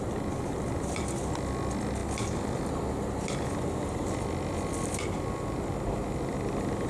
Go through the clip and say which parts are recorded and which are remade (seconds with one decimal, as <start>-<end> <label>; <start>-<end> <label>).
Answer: 0.0-6.9 recorded